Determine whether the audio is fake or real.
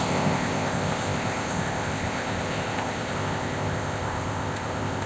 fake